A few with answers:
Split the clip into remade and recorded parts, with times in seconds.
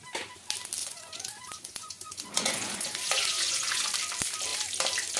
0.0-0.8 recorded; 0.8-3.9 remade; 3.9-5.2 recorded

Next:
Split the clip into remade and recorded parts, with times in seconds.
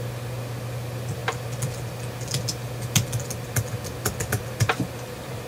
0.0-5.5 recorded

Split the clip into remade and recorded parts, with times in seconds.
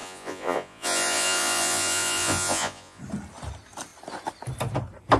0.0-3.0 remade; 3.0-5.2 recorded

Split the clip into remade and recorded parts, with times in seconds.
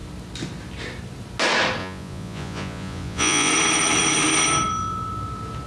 0.0-1.8 recorded; 1.8-3.5 remade; 3.5-5.7 recorded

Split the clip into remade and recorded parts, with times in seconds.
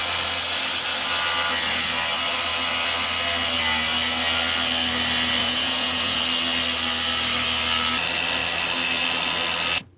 0.0-5.4 recorded; 5.4-6.2 remade; 6.2-10.0 recorded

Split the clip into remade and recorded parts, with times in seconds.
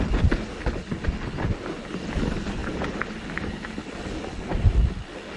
0.0-5.4 recorded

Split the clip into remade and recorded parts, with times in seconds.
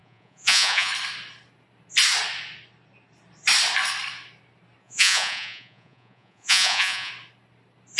0.0-0.9 remade; 0.9-4.8 recorded; 4.8-7.1 remade; 7.1-8.0 recorded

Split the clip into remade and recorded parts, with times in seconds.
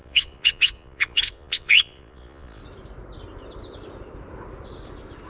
0.0-2.6 remade; 2.6-5.3 recorded